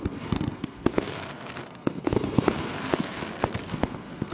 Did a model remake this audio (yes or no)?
yes